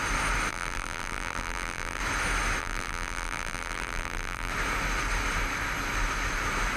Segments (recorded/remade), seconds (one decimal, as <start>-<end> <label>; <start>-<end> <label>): 0.0-0.5 recorded; 0.5-2.0 remade; 2.0-2.6 recorded; 2.6-4.5 remade; 4.5-6.8 recorded